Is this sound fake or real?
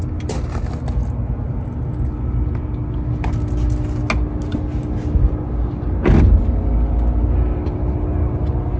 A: real